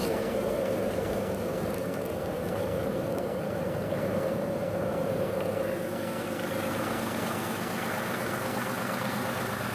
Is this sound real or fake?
fake